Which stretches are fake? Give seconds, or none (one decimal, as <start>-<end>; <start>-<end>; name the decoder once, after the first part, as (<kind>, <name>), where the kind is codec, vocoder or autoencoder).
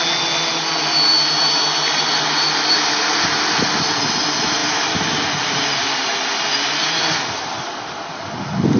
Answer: none